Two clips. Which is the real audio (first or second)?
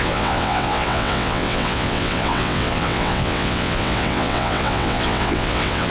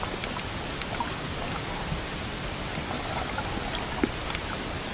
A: second